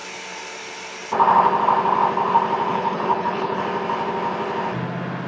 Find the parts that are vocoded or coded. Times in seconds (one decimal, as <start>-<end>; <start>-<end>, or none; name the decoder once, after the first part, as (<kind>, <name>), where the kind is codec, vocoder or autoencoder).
2.7-3.6 (codec, HILCodec)